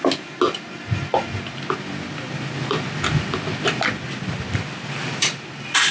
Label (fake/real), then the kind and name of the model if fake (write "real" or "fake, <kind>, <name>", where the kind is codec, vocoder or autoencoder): real